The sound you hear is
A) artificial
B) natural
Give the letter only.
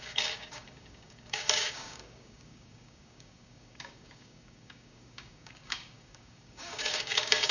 A